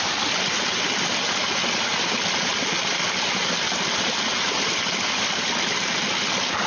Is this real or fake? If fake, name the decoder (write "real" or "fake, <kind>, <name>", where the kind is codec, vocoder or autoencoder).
real